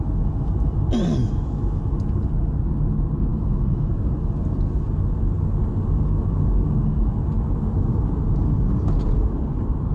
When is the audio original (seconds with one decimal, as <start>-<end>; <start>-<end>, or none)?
0.0-1.2; 1.8-3.3; 3.9-9.9